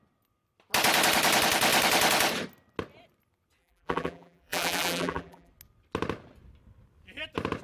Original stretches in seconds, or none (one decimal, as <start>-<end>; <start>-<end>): 0.0-3.6; 5.5-7.6